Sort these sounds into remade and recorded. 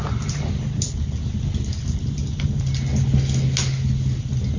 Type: recorded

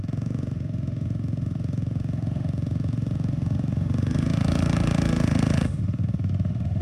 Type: remade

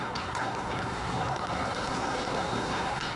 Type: remade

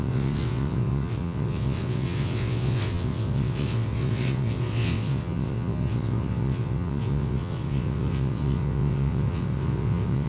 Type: remade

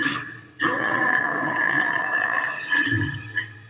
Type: remade